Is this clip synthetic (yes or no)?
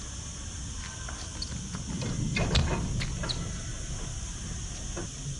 no